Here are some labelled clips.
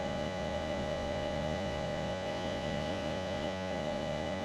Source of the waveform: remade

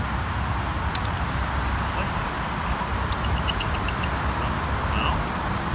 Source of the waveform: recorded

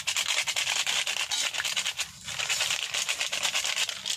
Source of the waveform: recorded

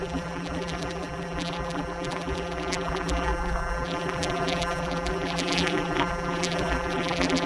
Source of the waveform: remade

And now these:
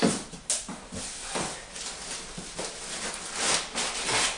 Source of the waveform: recorded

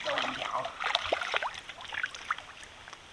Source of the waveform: remade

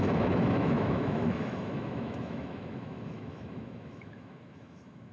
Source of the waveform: remade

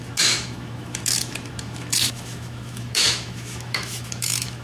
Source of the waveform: remade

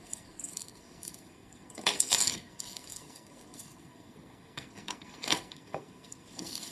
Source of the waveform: remade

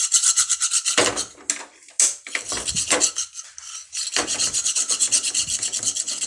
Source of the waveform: recorded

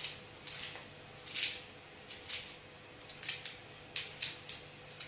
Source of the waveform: recorded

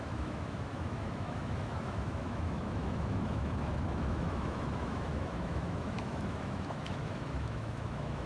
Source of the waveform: remade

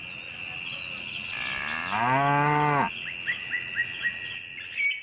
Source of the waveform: recorded